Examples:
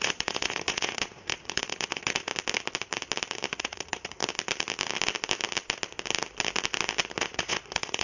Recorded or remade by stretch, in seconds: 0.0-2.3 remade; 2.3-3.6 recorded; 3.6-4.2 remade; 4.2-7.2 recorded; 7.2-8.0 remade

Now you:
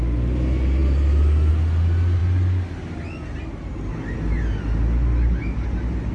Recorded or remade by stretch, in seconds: 0.0-6.1 recorded

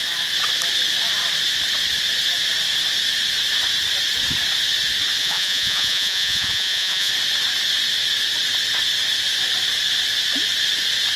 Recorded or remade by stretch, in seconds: 0.0-5.2 recorded; 5.2-7.1 remade; 7.1-11.2 recorded

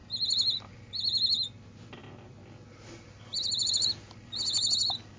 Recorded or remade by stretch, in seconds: 0.0-5.2 recorded

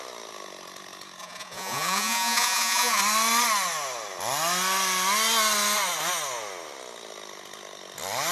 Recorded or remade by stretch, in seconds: 0.0-1.2 recorded; 1.2-3.0 remade; 3.0-8.3 recorded

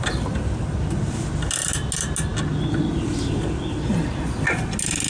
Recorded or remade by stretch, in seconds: 0.0-5.1 recorded

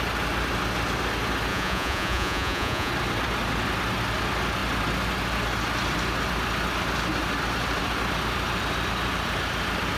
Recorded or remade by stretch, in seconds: 0.0-1.5 recorded; 1.5-2.9 remade; 2.9-10.0 recorded

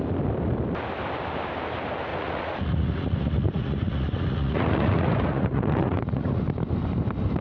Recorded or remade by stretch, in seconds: 0.0-2.1 recorded; 2.1-6.4 remade; 6.4-7.4 recorded